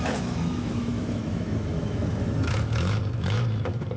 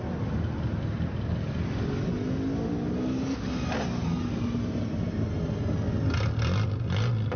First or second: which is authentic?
second